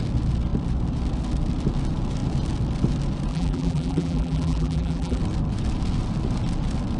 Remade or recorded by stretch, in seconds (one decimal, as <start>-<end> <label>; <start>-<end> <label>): 0.0-3.3 recorded; 3.3-5.2 remade; 5.2-7.0 recorded